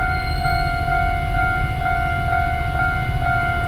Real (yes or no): yes